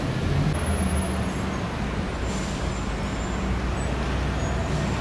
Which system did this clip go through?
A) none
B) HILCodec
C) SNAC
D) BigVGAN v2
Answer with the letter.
A